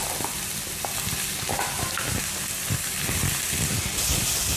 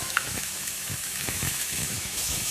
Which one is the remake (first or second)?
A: second